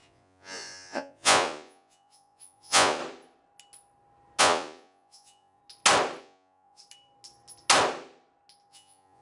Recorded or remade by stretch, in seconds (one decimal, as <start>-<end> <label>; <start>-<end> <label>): 0.0-3.0 remade; 3.0-4.4 recorded; 4.4-5.6 remade; 5.6-6.2 recorded; 6.2-6.8 remade; 6.8-8.7 recorded; 8.7-9.2 remade